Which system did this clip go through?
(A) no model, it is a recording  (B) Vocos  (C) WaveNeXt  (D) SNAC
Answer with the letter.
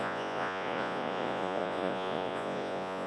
B